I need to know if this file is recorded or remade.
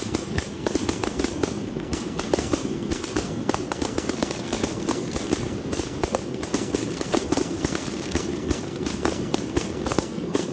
remade